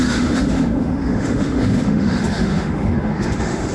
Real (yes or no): no